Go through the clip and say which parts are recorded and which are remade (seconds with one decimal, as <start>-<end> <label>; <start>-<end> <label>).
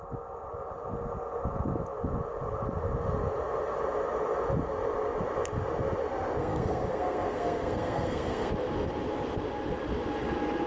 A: 0.0-6.4 recorded; 6.4-8.5 remade; 8.5-10.7 recorded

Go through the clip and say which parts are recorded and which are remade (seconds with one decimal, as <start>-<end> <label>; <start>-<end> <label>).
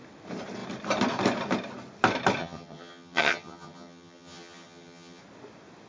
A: 0.0-2.4 recorded; 2.4-5.2 remade; 5.2-5.9 recorded